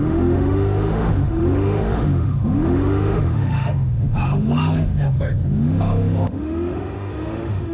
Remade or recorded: remade